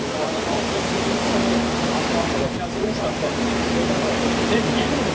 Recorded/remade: recorded